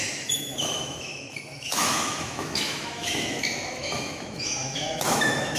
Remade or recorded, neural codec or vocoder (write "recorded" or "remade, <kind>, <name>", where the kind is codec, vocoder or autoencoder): remade, autoencoder, DAC-VAE